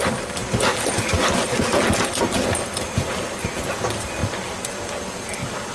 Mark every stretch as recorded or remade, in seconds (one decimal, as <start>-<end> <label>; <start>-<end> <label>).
0.0-5.7 recorded